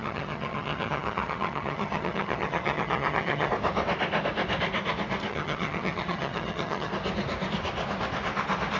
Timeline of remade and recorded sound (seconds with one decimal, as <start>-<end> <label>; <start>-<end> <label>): 0.0-3.5 remade; 3.5-5.3 recorded; 5.3-6.9 remade; 6.9-8.8 recorded